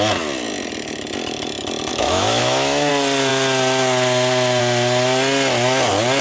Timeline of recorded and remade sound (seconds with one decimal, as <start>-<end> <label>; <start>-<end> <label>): 0.0-1.9 recorded; 1.9-2.9 remade; 2.9-6.2 recorded